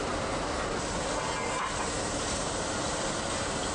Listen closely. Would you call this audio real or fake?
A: real